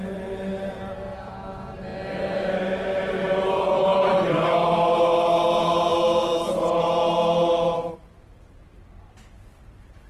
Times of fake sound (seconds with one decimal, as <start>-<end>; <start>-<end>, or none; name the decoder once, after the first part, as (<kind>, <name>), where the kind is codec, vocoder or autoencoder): none